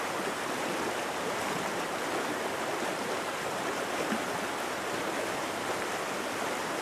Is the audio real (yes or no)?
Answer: yes